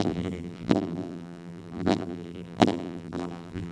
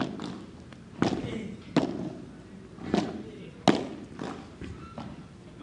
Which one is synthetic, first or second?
first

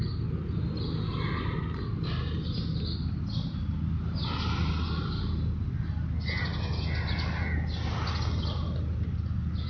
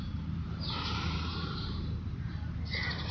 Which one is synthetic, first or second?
second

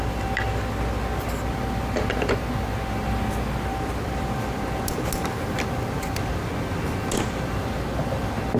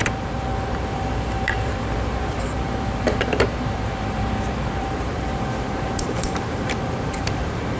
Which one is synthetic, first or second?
second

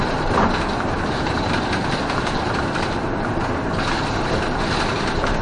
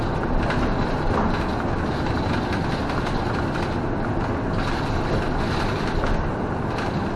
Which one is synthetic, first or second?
first